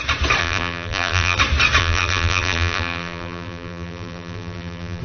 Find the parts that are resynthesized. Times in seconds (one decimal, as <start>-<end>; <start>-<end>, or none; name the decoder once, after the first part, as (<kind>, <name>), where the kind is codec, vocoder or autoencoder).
0.4-1.4 (vocoder, BigVGAN v2); 1.8-5.0